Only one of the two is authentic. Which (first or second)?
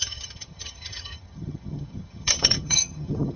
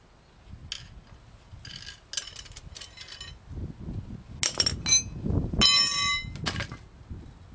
second